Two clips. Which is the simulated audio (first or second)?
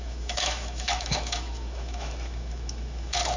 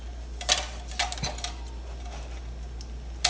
first